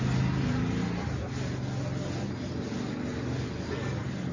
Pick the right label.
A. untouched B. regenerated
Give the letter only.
A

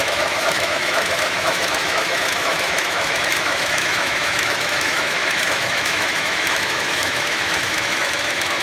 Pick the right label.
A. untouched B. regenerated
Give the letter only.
B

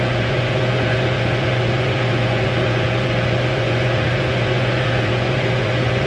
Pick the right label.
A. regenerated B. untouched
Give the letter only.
A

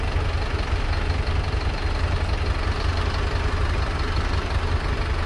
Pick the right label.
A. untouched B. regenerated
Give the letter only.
A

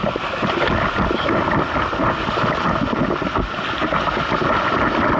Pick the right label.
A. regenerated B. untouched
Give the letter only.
B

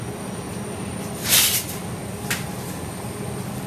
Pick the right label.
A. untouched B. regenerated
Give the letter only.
A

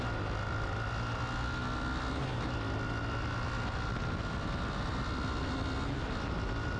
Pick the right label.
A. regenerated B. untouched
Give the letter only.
B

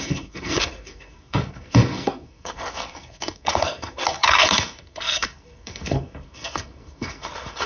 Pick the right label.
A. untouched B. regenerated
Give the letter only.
B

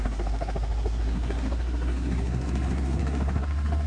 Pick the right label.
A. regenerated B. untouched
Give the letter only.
A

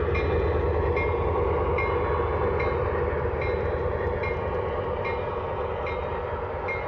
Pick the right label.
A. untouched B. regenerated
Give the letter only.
A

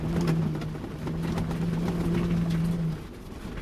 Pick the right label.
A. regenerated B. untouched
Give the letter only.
B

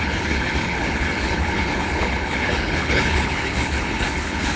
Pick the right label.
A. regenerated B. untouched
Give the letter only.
A